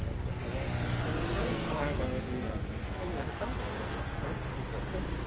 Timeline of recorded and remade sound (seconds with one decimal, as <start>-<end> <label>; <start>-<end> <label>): 0.0-1.3 recorded; 1.3-4.5 remade; 4.5-5.3 recorded